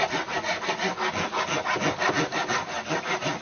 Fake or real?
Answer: real